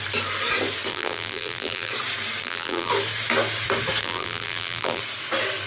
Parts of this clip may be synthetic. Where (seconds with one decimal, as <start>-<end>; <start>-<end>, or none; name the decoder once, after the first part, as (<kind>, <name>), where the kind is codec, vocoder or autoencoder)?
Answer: 0.9-1.9 (vocoder, BigVGAN v2); 2.4-2.9; 4.0-5.0